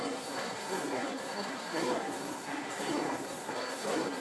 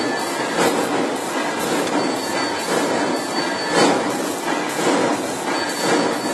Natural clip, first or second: second